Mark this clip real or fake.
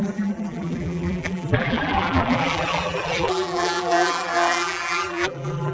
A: fake